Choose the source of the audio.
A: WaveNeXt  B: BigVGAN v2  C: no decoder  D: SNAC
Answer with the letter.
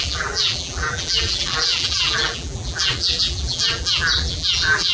B